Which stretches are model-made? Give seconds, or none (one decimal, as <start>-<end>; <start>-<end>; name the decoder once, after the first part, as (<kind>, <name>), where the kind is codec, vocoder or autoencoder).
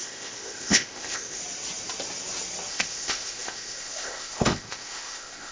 0.0-1.4 (codec, ZipCodec); 2.7-5.5